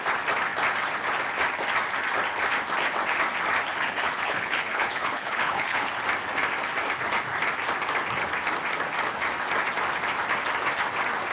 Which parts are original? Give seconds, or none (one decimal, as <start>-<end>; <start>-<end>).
0.0-3.7; 5.9-11.3